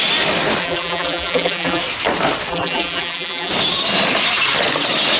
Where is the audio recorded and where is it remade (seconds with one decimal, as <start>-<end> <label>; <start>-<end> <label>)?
0.0-0.6 recorded; 0.6-1.8 remade; 1.8-2.5 recorded; 2.5-3.5 remade; 3.5-5.2 recorded